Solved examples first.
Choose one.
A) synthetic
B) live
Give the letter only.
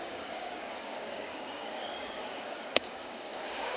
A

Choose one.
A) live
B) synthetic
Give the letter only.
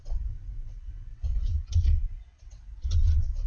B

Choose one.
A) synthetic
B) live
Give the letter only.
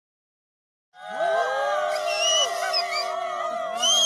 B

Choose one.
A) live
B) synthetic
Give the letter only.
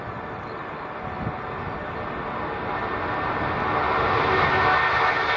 A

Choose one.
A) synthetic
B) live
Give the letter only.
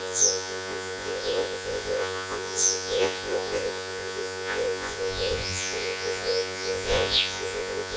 A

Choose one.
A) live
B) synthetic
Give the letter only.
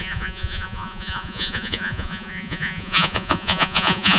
B